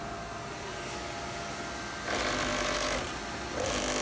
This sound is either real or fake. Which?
real